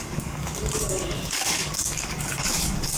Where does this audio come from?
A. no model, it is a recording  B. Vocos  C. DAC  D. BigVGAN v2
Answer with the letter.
C